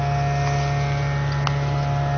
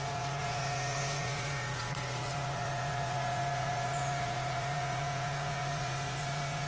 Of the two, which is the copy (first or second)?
second